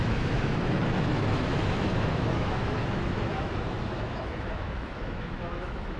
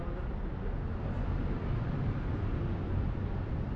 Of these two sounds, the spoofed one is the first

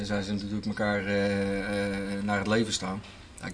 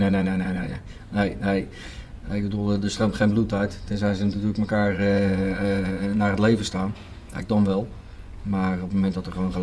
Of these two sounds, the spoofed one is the second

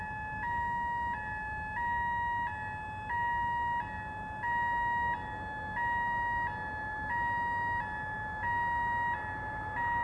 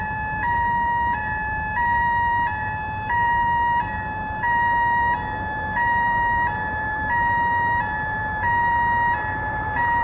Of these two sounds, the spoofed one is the second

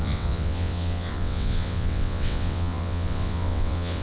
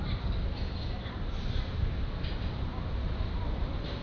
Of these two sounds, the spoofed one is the first